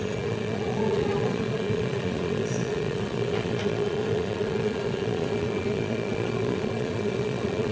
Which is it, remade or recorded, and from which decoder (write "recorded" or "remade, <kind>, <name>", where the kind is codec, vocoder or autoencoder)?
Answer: remade, vocoder, Vocos